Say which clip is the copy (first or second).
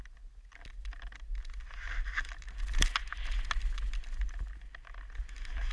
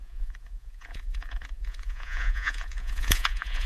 second